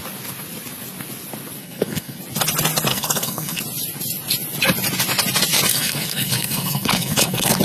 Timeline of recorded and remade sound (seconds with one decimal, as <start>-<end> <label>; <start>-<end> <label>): 0.0-1.6 recorded; 1.6-2.2 remade; 2.2-2.9 recorded; 2.9-3.6 remade; 3.6-5.7 recorded; 5.7-7.6 remade